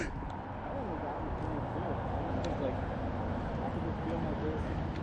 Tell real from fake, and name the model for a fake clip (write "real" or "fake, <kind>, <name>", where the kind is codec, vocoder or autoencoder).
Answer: real